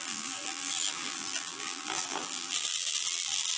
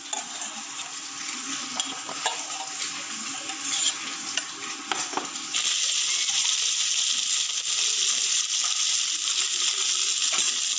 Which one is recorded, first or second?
second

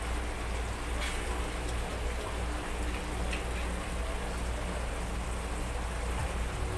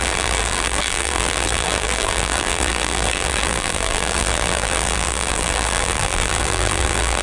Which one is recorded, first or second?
first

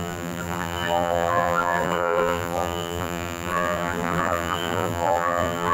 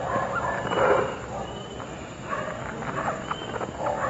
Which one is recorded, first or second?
second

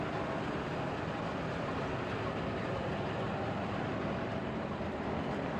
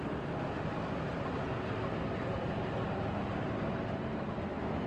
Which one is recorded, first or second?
second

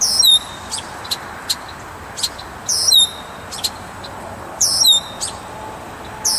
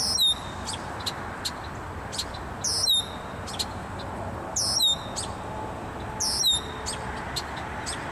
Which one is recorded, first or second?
second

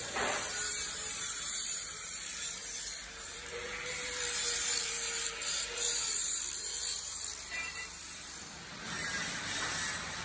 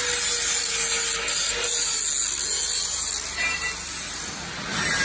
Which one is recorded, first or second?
second